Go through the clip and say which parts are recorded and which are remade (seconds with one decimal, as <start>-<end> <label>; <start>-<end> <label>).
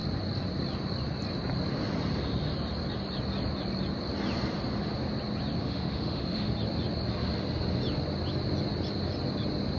0.0-5.6 recorded; 5.6-6.5 remade; 6.5-9.8 recorded